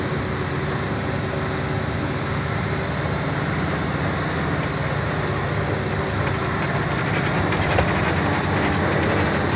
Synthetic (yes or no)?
no